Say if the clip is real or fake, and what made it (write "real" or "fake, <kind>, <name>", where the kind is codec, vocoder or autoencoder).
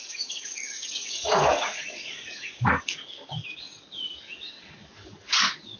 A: fake, codec, DAC